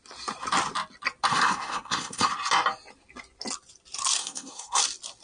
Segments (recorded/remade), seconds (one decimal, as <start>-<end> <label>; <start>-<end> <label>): 0.0-1.3 recorded; 1.3-2.3 remade; 2.3-4.2 recorded; 4.2-4.8 remade; 4.8-5.2 recorded